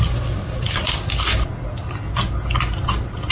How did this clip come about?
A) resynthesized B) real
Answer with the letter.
B